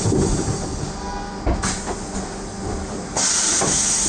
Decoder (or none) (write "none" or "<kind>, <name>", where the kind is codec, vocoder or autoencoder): none